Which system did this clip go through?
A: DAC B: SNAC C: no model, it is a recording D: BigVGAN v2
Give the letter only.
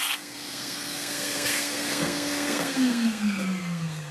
B